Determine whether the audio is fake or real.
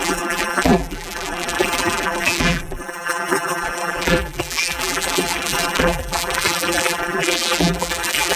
fake